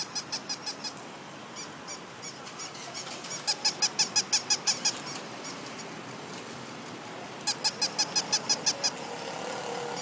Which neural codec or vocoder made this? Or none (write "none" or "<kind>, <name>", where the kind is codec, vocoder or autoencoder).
none